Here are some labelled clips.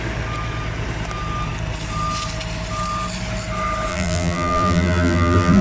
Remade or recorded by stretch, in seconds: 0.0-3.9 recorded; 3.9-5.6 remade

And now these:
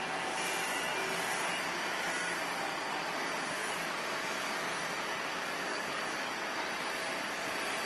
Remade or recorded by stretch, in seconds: 0.0-3.6 recorded; 3.6-4.8 remade; 4.8-5.7 recorded; 5.7-6.3 remade; 6.3-7.9 recorded

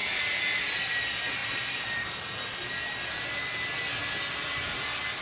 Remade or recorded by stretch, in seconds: 0.0-5.2 recorded

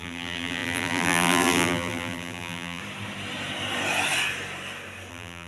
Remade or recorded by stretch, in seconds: 0.0-2.8 remade; 2.8-5.1 recorded; 5.1-5.5 remade